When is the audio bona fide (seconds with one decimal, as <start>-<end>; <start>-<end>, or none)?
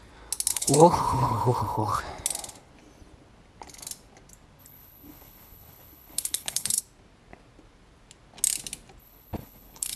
0.0-0.5; 2.0-4.6; 6.8-9.0